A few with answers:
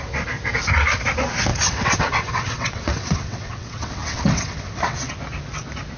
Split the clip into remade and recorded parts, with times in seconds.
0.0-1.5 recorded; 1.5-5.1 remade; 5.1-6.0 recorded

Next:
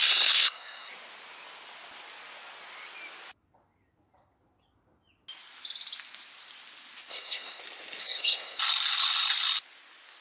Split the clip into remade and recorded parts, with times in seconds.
0.0-0.9 remade; 0.9-7.1 recorded; 7.1-7.6 remade; 7.6-8.0 recorded; 8.0-8.6 remade; 8.6-10.2 recorded

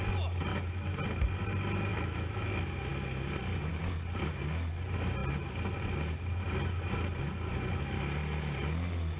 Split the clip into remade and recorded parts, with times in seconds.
0.0-0.5 recorded; 0.5-1.0 remade; 1.0-1.9 recorded; 1.9-2.5 remade; 2.5-9.2 recorded